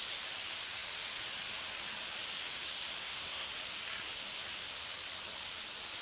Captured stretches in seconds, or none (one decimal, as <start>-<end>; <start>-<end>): 0.0-3.0; 3.5-6.0